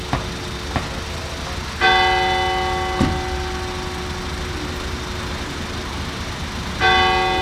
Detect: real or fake real